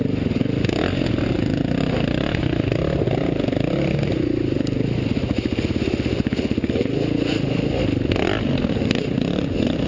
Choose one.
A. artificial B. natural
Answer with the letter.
B